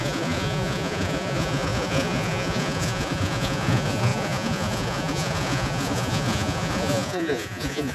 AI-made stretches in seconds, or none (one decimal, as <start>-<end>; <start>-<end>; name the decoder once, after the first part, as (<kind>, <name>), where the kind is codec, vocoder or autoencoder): 0.0-7.9 (vocoder, Vocos)